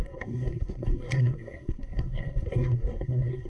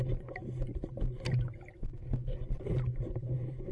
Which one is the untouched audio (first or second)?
second